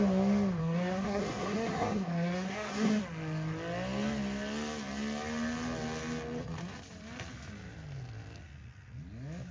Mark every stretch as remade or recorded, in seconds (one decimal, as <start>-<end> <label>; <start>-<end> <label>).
0.0-0.6 recorded; 0.6-3.0 remade; 3.0-9.5 recorded